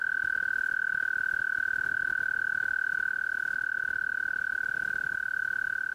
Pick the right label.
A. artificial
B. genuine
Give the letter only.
B